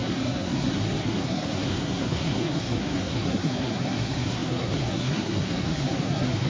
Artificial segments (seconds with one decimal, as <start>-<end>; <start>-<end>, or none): 0.0-6.5